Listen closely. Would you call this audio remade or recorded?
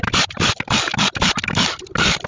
recorded